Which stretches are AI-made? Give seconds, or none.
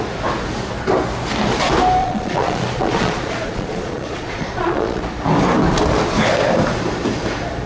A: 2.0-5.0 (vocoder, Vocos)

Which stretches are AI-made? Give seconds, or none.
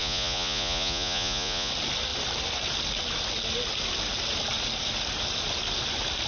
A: 0.0-1.7 (vocoder, Vocos)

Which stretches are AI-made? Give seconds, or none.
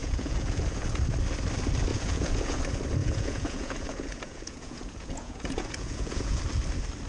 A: 0.0-1.0 (vocoder, Vocos); 1.9-2.6; 3.0-6.4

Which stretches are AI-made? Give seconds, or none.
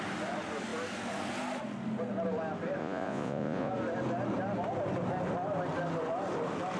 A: 2.8-3.7 (vocoder, Vocos)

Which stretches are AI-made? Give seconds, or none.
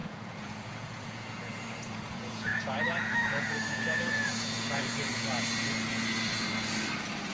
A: 0.0-5.1 (vocoder, Vocos)